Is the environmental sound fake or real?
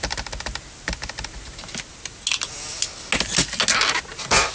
real